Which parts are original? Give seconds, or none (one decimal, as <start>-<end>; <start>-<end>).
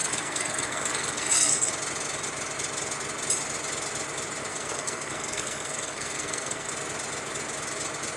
1.7-4.5; 6.7-8.2